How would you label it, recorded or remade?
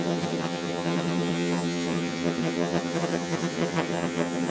remade